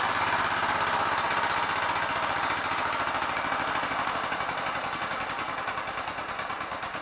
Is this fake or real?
real